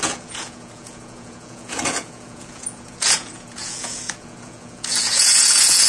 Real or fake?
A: fake